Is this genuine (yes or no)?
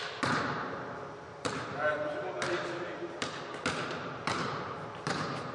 no